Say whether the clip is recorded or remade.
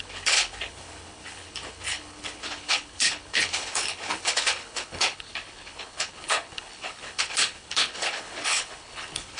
remade